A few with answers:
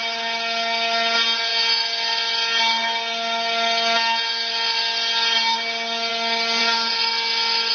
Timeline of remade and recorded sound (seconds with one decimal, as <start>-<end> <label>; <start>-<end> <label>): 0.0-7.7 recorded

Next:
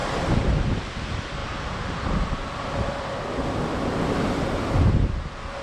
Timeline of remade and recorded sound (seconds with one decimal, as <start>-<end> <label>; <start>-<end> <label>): 0.0-1.4 recorded; 1.4-4.2 remade; 4.2-5.6 recorded

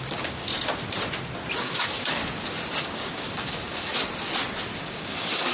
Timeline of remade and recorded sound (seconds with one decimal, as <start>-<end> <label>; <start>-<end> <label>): 0.0-0.5 remade; 0.5-1.6 recorded; 1.6-2.2 remade; 2.2-2.8 recorded; 2.8-3.9 remade; 3.9-4.8 recorded; 4.8-5.5 remade